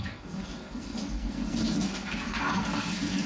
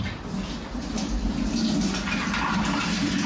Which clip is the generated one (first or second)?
first